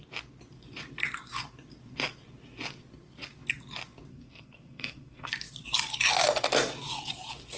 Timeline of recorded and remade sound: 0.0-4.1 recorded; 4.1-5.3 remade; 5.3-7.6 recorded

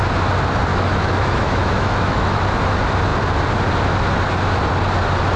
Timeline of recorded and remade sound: 0.0-0.7 recorded; 0.7-2.4 remade; 2.4-5.4 recorded

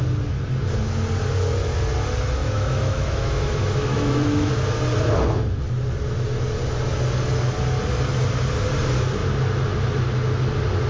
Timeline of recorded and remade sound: 0.0-2.4 recorded; 2.4-4.5 remade; 4.5-10.9 recorded

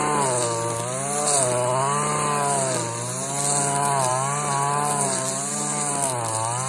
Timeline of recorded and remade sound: 0.0-6.7 recorded

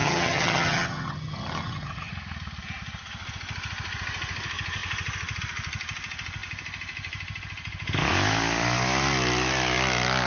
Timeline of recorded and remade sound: 0.0-2.1 remade; 2.1-10.3 recorded

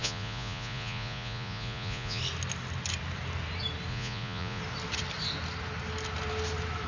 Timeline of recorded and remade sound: 0.0-2.2 remade; 2.2-3.9 recorded; 3.9-4.6 remade; 4.6-6.9 recorded

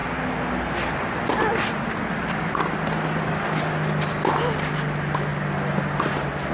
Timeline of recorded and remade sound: 0.0-6.5 recorded